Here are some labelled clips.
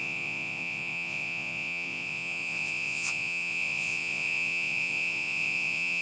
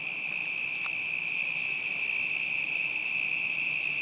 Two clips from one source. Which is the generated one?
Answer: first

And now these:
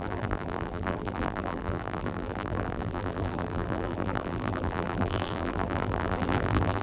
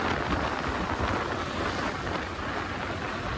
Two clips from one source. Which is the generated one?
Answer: first